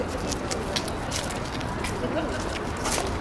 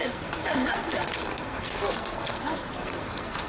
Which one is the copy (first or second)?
second